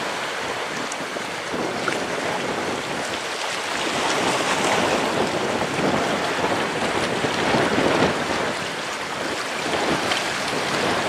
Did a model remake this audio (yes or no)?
no